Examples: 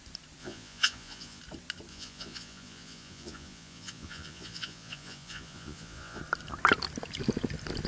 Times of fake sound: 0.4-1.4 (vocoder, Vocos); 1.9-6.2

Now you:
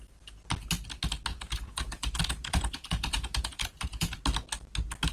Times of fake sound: 1.3-4.2 (vocoder, Vocos)

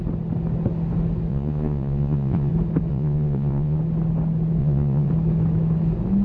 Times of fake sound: 1.3-2.5 (vocoder, Vocos); 2.9-3.8; 4.6-5.1